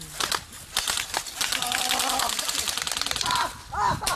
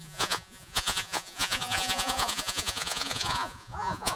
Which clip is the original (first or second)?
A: first